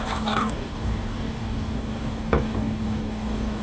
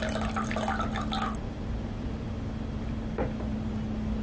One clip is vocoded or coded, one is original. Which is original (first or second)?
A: second